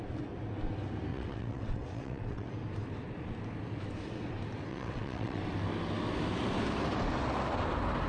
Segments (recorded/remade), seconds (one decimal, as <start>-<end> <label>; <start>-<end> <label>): 0.0-1.1 recorded; 1.1-2.5 remade; 2.5-4.7 recorded; 4.7-5.4 remade; 5.4-8.1 recorded